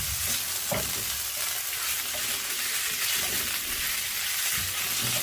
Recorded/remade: recorded